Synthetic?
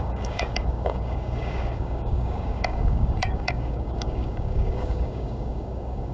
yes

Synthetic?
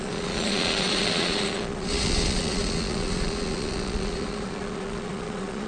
yes